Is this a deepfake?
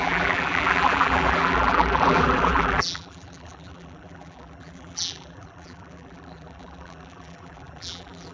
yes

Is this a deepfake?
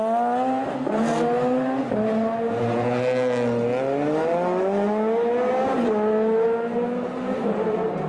no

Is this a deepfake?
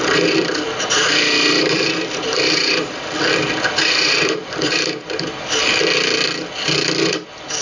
yes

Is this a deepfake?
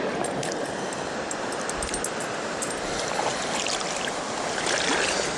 no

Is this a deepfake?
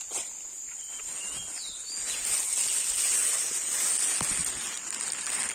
no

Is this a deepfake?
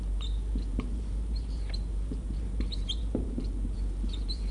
yes